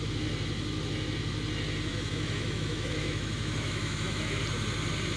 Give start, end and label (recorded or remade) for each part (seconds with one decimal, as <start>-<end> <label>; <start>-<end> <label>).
0.0-1.9 recorded; 1.9-4.4 remade; 4.4-5.2 recorded